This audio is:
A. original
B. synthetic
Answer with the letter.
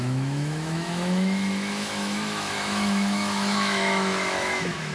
B